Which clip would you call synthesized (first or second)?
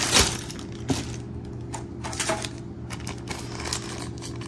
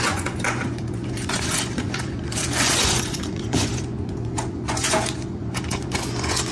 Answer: second